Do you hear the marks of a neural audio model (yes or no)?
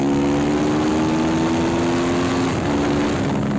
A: no